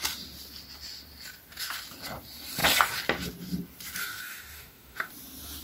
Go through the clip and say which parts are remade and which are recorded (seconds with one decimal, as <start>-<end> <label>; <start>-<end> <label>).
0.0-4.0 recorded; 4.0-5.1 remade; 5.1-5.6 recorded